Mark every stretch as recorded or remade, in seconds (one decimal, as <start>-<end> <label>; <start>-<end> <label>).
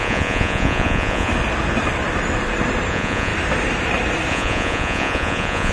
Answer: 0.0-1.3 remade; 1.3-2.9 recorded; 2.9-3.3 remade; 3.3-4.3 recorded; 4.3-5.7 remade